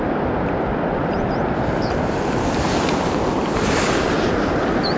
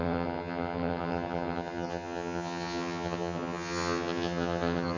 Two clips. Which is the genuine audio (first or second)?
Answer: first